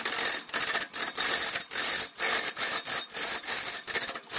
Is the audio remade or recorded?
recorded